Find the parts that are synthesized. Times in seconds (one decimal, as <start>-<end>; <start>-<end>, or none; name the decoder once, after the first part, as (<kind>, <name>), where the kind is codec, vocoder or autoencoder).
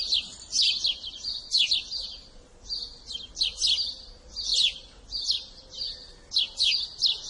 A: none